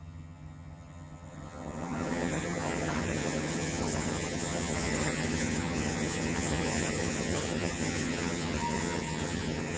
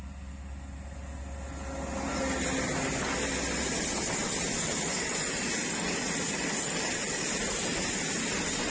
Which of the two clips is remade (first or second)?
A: first